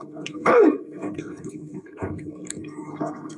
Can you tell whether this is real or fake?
fake